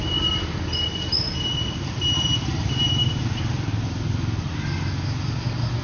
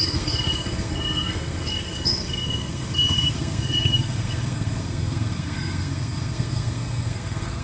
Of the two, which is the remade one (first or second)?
second